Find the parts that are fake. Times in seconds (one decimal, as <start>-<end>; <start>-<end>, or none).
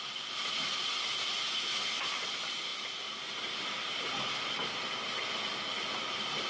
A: none